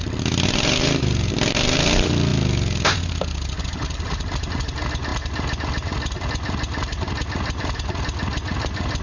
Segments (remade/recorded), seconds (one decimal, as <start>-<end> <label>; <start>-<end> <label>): 0.0-9.0 recorded